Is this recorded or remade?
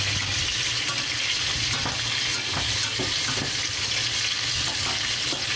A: recorded